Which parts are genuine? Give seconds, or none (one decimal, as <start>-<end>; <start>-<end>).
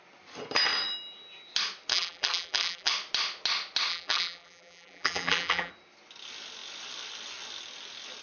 0.0-1.9; 2.9-3.9; 5.7-8.2